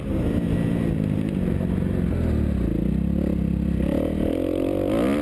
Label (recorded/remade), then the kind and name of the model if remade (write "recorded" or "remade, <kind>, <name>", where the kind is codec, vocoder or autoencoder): recorded